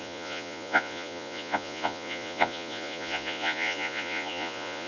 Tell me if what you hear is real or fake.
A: fake